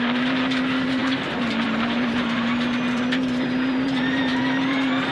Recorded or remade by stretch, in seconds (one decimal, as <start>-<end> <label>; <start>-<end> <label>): 0.0-5.1 remade